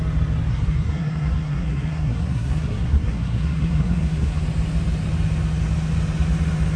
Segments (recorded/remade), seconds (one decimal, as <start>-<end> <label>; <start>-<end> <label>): 0.0-0.5 recorded; 0.5-4.4 remade; 4.4-6.8 recorded

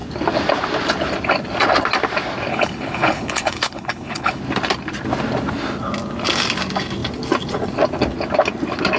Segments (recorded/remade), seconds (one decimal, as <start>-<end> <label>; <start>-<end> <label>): 0.0-2.5 recorded; 2.5-4.4 remade; 4.4-9.0 recorded

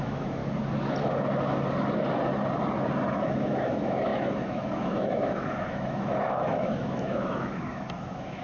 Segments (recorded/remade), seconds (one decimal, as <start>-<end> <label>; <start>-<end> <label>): 0.0-0.4 remade; 0.4-3.1 recorded; 3.1-8.4 remade

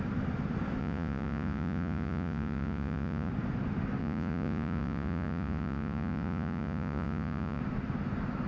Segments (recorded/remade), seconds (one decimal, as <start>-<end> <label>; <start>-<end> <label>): 0.0-0.8 recorded; 0.8-3.3 remade; 3.3-4.0 recorded; 4.0-7.6 remade; 7.6-8.5 recorded

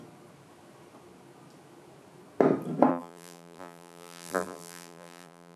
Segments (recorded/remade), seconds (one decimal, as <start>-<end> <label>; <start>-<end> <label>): 0.0-2.9 recorded; 2.9-5.6 remade

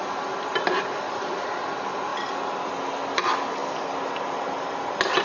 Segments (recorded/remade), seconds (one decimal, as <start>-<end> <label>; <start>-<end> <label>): 0.0-5.2 recorded

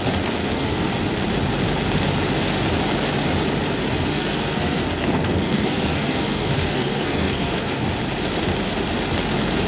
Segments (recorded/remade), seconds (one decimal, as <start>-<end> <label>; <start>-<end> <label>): 0.0-0.4 recorded; 0.4-1.0 remade; 1.0-4.1 recorded; 4.1-7.9 remade; 7.9-9.7 recorded

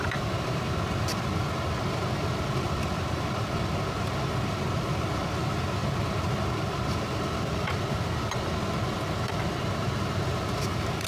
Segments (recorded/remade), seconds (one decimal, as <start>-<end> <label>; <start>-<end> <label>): 0.0-3.7 remade; 3.7-4.4 recorded; 4.4-11.1 remade